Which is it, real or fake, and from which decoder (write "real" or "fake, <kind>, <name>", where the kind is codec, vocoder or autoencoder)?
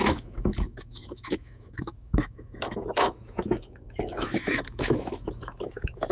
fake, autoencoder, DAC-VAE